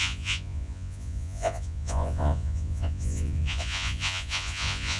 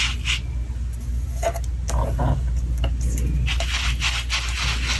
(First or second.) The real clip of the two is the second